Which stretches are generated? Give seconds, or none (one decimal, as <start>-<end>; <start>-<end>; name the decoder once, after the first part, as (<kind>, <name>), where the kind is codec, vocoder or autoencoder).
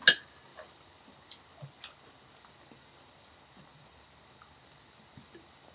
none